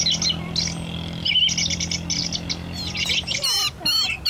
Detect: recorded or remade recorded